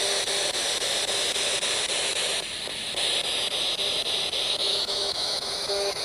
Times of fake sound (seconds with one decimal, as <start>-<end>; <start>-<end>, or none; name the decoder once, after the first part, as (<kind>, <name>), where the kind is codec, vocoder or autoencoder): 4.6-6.0 (autoencoder, DAC-VAE)